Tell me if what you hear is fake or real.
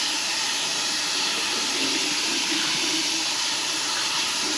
fake